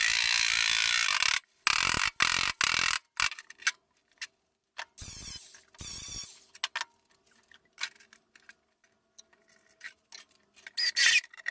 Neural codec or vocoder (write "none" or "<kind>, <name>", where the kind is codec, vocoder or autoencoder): none